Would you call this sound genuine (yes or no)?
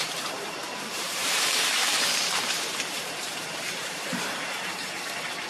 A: no